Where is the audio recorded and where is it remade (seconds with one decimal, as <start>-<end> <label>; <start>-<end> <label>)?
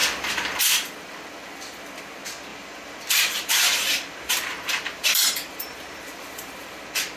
0.0-2.5 recorded; 2.5-6.8 remade; 6.8-7.2 recorded